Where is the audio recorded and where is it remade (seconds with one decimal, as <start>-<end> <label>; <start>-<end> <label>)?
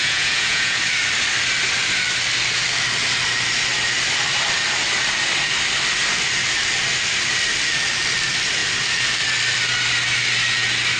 0.0-0.8 remade; 0.8-11.0 recorded